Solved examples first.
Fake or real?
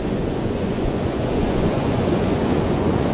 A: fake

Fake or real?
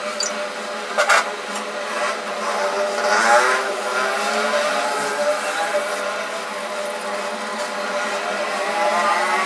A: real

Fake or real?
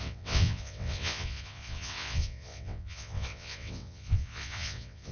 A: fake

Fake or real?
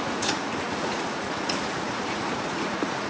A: fake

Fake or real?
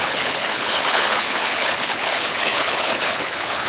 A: fake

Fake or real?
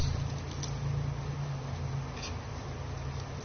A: real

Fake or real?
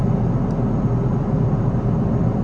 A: real